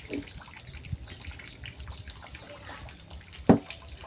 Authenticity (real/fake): real